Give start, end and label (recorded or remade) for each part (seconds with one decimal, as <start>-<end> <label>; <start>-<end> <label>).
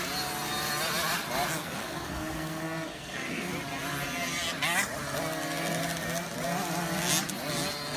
0.0-1.6 recorded; 1.6-3.5 remade; 3.5-8.0 recorded